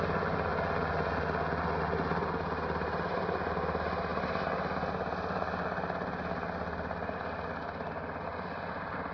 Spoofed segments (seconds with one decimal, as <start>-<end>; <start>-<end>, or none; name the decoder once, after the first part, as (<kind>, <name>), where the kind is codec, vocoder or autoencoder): none